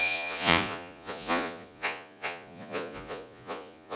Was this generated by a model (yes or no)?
yes